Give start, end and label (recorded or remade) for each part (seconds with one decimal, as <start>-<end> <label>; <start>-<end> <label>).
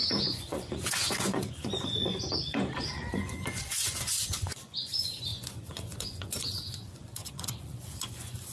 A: 0.0-8.5 remade